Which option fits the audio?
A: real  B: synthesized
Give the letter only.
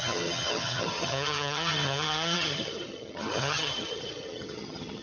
B